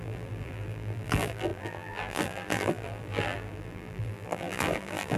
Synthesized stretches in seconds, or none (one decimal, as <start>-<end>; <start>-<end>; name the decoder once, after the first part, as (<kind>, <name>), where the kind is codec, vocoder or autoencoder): 0.0-5.2 (vocoder, BigVGAN v2)